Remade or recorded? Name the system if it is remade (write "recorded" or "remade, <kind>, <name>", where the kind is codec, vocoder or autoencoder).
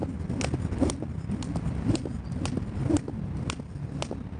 recorded